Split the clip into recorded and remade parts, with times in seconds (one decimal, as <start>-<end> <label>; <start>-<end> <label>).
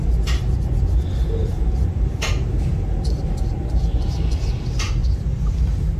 0.0-6.0 recorded